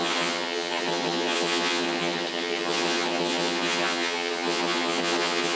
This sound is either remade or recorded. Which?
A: remade